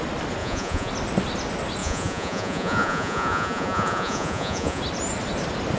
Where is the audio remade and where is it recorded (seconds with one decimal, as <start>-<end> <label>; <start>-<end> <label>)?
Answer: 0.0-0.4 recorded; 0.4-0.9 remade; 0.9-1.8 recorded; 1.8-4.8 remade; 4.8-5.8 recorded

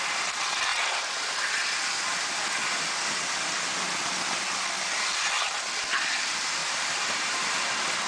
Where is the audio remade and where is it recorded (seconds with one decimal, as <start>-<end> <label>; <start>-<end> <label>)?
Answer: 0.0-0.7 recorded; 0.7-1.3 remade; 1.3-6.6 recorded; 6.6-7.5 remade; 7.5-8.1 recorded